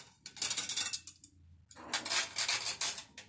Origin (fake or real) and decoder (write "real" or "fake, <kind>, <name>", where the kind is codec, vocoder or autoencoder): real